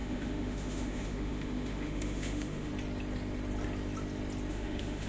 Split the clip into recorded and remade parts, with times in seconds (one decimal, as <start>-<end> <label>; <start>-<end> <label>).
0.0-2.7 remade; 2.7-4.5 recorded; 4.5-5.1 remade